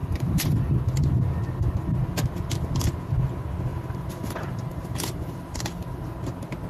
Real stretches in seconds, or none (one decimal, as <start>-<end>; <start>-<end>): 0.8-3.7; 6.1-6.7